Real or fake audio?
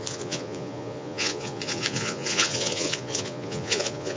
fake